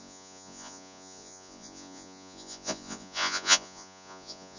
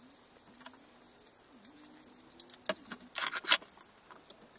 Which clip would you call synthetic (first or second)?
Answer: first